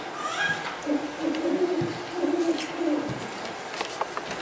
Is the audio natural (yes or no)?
no